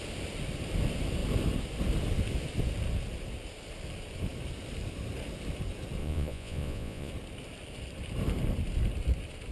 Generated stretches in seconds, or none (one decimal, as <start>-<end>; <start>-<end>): 6.0-7.1